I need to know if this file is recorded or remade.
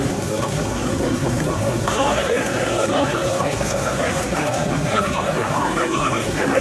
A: remade